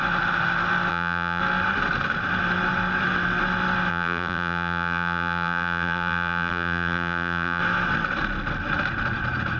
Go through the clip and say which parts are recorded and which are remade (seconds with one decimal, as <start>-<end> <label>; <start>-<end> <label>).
0.0-0.9 recorded; 0.9-1.4 remade; 1.4-3.9 recorded; 3.9-7.6 remade; 7.6-9.6 recorded

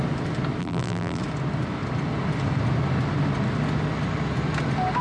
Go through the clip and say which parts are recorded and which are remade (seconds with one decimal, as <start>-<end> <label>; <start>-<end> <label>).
0.0-0.6 recorded; 0.6-1.2 remade; 1.2-5.0 recorded